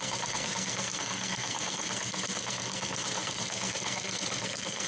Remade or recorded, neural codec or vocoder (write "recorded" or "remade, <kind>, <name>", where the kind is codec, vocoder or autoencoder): remade, codec, SNAC